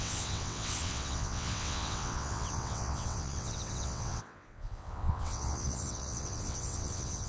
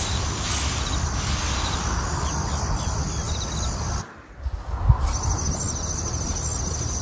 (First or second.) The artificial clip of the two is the first